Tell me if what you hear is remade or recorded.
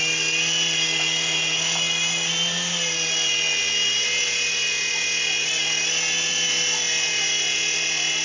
recorded